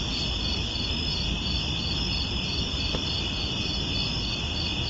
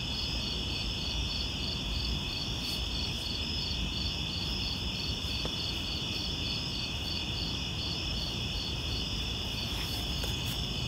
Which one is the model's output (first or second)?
second